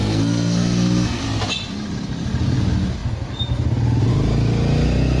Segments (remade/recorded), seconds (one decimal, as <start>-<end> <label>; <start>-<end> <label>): 0.0-1.2 remade; 1.2-5.2 recorded